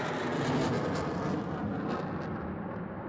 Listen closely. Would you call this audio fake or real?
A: real